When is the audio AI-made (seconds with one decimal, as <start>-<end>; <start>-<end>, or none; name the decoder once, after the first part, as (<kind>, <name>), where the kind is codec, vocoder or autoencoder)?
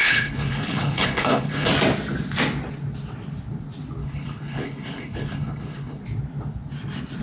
0.0-1.7 (codec, HILCodec); 4.0-6.0